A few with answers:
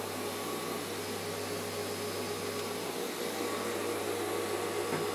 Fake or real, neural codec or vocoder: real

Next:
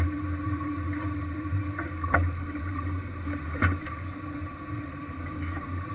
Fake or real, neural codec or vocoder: fake, vocoder, BigVGAN v2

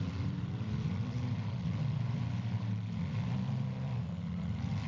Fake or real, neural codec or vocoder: fake, vocoder, BigVGAN v2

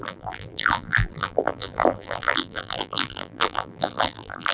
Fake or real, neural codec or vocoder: fake, vocoder, BigVGAN v2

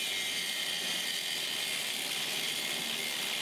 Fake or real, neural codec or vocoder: real